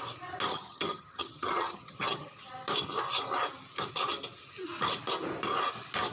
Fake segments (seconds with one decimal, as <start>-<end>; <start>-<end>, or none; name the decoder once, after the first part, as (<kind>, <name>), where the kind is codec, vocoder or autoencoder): 0.5-2.4 (vocoder, HiFi-GAN)